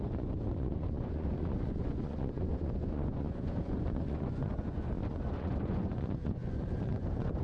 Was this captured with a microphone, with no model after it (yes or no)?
no